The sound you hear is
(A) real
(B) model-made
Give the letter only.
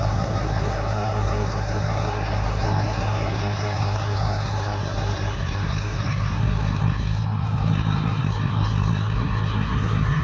B